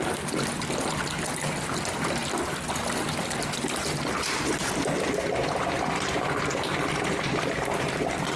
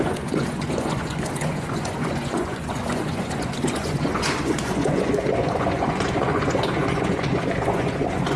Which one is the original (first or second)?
first